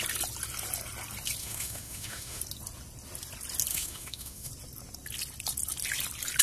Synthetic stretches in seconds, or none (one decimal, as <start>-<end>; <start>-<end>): 1.4-2.4; 3.7-4.5